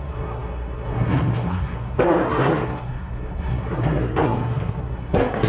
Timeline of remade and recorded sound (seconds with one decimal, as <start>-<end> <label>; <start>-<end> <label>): 0.0-5.5 remade

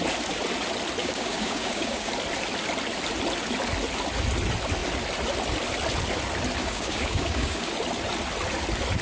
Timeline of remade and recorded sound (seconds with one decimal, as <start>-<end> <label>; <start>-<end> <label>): 0.0-1.0 recorded; 1.0-2.1 remade; 2.1-6.6 recorded; 6.6-7.7 remade; 7.7-9.0 recorded

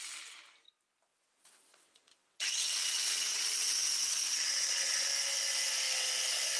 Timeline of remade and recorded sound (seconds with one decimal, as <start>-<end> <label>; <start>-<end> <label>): 0.0-1.1 recorded; 1.1-5.1 remade; 5.1-6.6 recorded